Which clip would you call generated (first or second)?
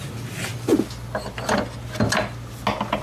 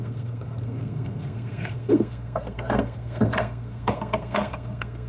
second